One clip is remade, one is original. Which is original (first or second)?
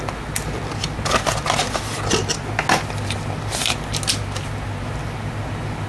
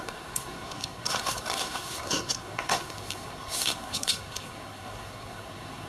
first